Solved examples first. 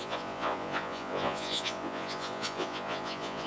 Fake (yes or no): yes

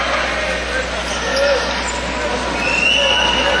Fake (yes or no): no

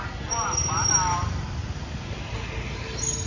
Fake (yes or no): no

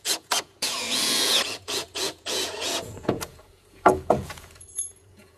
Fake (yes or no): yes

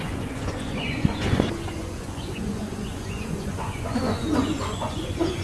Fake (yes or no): yes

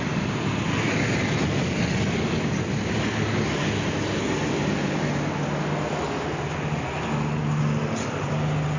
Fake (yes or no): no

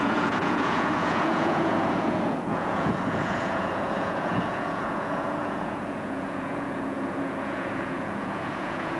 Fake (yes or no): yes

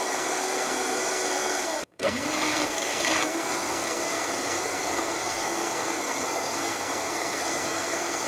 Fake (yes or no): yes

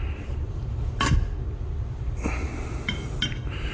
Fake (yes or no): no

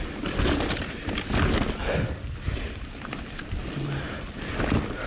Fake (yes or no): no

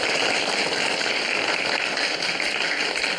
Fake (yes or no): no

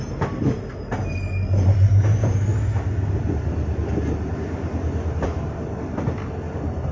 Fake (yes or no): no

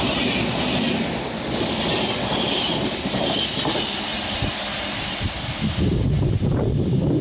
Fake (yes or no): no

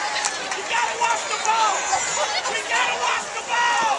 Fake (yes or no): no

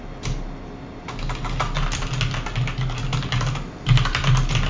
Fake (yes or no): no